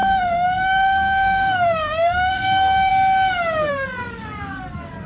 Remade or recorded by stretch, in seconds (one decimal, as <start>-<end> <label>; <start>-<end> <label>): 0.0-2.9 remade; 2.9-3.7 recorded; 3.7-5.1 remade